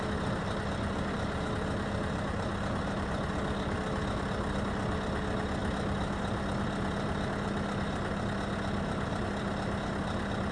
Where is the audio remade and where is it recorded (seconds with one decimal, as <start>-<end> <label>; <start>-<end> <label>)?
0.0-10.5 recorded